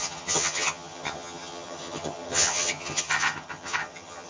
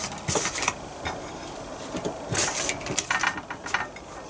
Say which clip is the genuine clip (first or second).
second